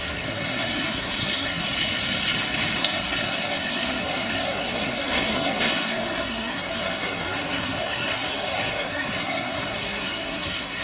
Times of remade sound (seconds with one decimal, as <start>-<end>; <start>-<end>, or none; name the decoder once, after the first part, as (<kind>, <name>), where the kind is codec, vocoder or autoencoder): 0.0-1.6 (codec, SNAC); 2.8-10.8